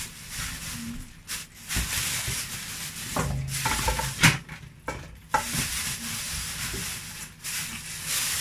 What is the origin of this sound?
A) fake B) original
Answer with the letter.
B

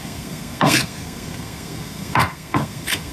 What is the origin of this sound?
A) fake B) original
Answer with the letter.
A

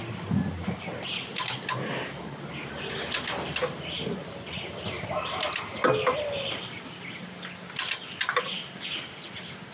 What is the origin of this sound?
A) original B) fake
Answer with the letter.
A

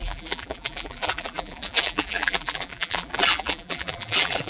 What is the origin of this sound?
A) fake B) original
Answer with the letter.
A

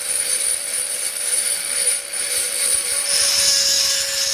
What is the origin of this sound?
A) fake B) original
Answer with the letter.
B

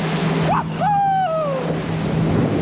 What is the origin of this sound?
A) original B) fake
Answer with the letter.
A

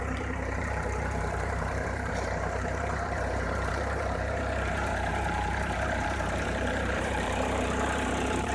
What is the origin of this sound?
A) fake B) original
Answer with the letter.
A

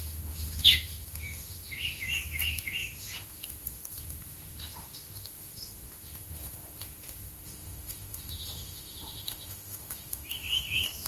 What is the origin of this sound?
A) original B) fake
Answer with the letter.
B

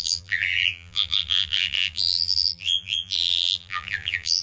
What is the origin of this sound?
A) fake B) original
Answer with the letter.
A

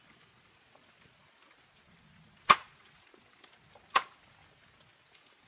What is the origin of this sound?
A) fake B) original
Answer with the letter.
B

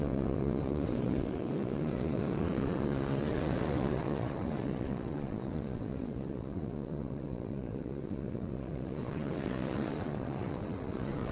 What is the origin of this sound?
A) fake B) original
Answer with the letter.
A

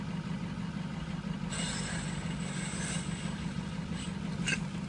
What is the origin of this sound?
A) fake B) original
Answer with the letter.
B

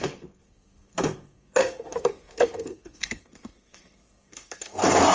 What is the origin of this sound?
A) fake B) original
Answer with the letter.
A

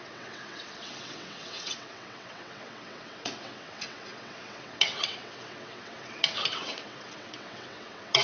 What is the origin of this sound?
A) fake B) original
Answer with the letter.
A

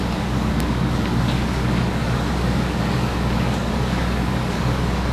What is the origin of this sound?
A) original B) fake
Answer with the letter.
B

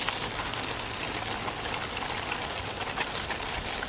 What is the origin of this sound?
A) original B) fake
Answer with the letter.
A